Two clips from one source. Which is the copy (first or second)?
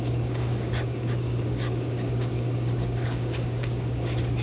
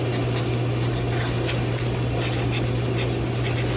first